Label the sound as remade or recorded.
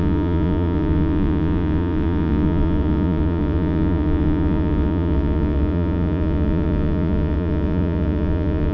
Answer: remade